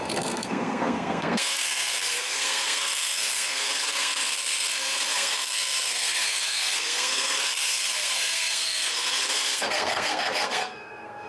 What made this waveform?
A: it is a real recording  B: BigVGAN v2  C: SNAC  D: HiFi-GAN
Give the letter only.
C